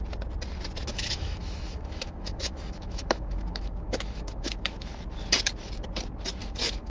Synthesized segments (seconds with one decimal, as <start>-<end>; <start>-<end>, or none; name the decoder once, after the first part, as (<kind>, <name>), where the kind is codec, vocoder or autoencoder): 0.9-5.0 (autoencoder, DAC-VAE); 6.4-6.9